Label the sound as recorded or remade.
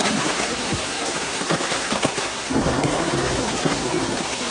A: remade